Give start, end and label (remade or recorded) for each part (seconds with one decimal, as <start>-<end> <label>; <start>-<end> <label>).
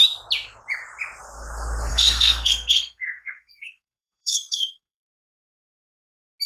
0.0-1.9 recorded; 1.9-5.8 remade; 5.8-6.5 recorded